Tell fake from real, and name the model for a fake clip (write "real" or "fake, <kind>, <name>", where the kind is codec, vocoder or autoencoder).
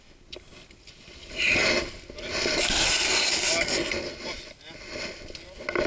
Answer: real